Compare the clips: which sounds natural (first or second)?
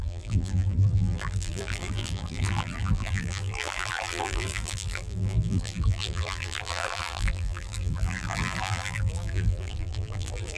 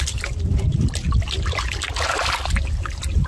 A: second